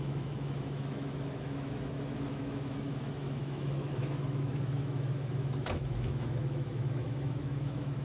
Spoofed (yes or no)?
yes